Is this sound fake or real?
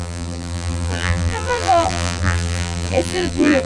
fake